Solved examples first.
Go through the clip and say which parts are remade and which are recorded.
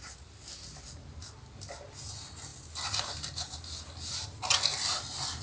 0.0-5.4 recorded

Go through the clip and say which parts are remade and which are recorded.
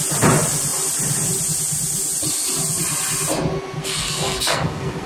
0.0-3.8 recorded; 3.8-5.1 remade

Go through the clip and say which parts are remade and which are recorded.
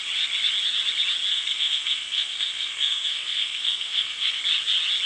0.0-1.3 recorded; 1.3-4.4 remade; 4.4-5.1 recorded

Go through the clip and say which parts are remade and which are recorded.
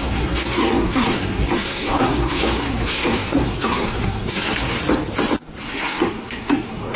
0.0-4.8 remade; 4.8-5.6 recorded; 5.6-7.0 remade